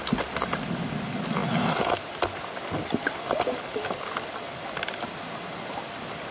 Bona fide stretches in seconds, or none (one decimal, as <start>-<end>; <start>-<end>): 0.0-6.3